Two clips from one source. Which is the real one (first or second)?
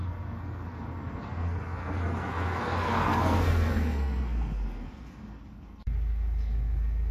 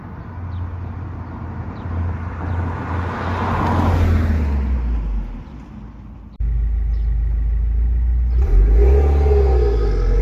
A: second